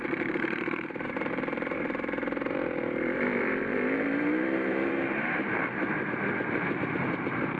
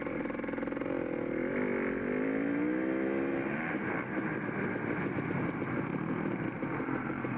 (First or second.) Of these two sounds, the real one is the second